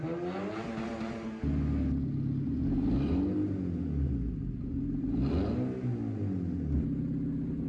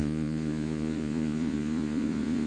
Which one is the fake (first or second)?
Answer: second